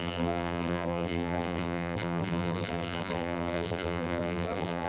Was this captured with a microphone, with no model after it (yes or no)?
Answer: no